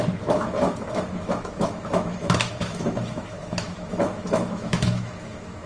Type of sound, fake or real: fake